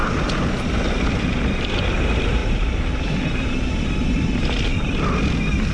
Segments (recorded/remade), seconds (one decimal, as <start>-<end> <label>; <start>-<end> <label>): 0.0-5.7 recorded